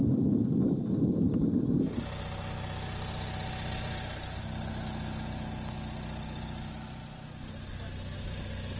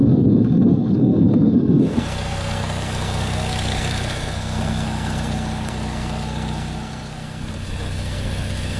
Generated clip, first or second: second